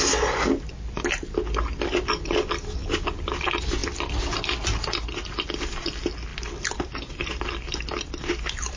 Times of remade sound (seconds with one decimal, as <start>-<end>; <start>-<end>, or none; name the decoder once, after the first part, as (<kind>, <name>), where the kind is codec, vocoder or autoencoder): none